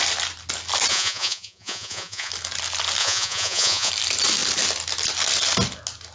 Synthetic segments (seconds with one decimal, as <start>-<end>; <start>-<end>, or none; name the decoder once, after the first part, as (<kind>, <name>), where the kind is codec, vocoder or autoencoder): 0.9-2.3 (vocoder, Vocos); 3.0-3.9